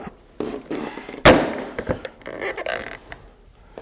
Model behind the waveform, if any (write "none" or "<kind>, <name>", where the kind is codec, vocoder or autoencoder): none